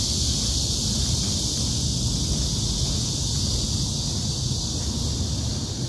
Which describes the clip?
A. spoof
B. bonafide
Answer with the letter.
B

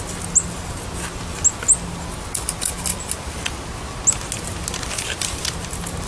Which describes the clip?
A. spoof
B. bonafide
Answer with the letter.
B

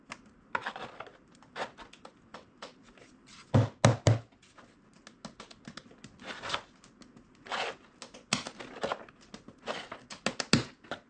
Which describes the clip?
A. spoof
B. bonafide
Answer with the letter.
B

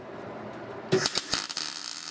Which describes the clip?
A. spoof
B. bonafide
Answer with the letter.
B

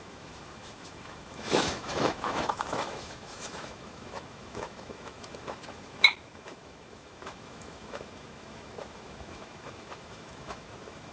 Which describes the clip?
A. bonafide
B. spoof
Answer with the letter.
B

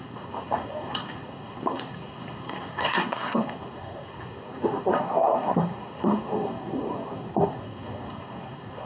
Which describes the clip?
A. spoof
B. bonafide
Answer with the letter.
A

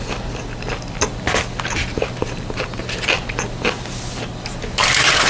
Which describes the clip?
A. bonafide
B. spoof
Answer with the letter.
A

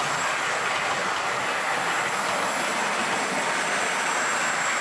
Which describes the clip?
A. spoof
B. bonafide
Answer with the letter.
B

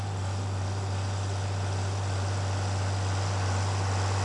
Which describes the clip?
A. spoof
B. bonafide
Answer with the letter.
B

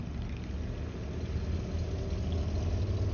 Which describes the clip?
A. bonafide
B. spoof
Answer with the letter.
A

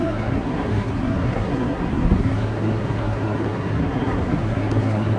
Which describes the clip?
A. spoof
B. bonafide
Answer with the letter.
A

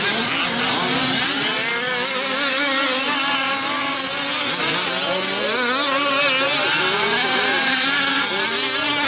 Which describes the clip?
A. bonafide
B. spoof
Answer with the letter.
A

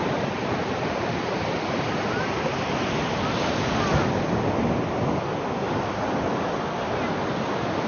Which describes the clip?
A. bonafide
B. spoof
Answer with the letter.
A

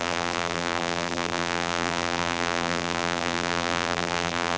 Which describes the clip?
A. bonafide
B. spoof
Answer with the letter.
B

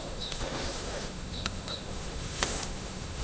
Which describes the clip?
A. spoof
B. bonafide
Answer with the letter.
A